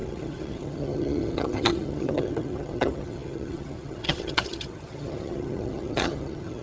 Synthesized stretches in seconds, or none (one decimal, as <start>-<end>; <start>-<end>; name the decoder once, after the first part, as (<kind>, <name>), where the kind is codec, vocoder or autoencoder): 0.0-6.6 (vocoder, HiFi-GAN)